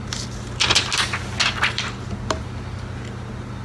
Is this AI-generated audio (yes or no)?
no